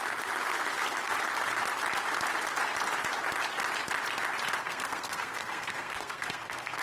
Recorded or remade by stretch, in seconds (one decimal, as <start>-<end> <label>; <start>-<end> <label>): 0.0-4.6 recorded; 4.6-6.8 remade